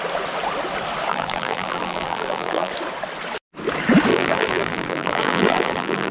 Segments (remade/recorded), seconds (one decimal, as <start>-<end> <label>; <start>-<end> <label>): 0.0-1.1 recorded; 1.1-2.7 remade; 2.7-4.1 recorded; 4.1-6.1 remade